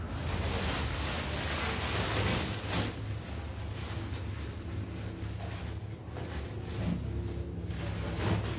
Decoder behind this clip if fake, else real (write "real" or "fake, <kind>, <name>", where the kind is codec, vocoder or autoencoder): real